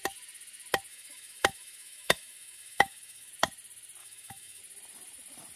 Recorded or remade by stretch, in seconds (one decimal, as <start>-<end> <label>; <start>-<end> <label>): 0.0-0.9 recorded; 0.9-3.3 remade; 3.3-4.0 recorded; 4.0-4.6 remade; 4.6-5.6 recorded